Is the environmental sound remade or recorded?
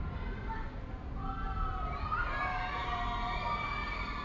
recorded